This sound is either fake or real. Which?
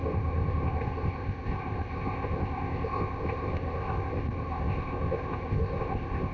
fake